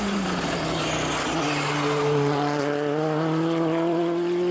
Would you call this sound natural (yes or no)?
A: yes